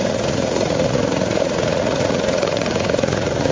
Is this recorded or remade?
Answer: remade